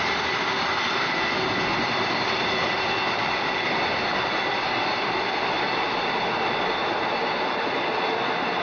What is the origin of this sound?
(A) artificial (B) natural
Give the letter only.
B